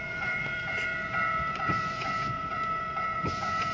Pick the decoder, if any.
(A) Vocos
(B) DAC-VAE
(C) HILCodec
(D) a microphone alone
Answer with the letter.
A